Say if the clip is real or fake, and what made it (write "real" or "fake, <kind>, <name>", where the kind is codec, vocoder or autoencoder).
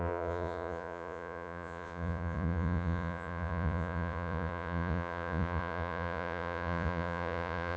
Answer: fake, vocoder, Vocos